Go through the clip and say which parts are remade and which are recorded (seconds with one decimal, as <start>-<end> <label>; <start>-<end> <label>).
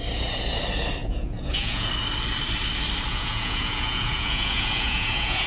0.0-1.0 recorded; 1.0-1.9 remade; 1.9-3.1 recorded; 3.1-5.5 remade